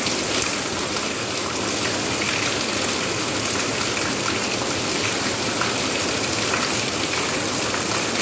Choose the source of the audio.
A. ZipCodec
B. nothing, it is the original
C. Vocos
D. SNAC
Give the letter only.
B